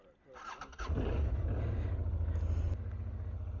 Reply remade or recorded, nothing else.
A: recorded